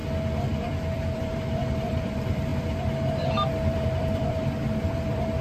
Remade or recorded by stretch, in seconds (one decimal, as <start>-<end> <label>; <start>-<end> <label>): 0.0-0.5 recorded; 0.5-5.4 remade